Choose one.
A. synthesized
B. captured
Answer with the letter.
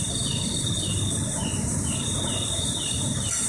B